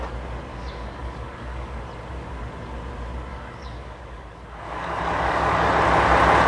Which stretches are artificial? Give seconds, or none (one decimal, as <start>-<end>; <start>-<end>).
0.5-1.8; 3.3-5.7